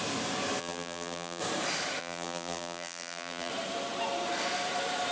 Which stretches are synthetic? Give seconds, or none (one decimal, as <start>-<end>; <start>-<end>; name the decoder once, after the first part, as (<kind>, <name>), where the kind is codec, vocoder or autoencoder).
0.6-1.4 (vocoder, BigVGAN v2); 2.0-3.5